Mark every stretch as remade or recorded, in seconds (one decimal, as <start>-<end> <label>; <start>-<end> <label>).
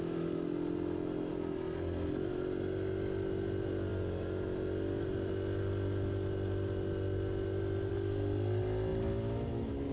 0.0-9.9 recorded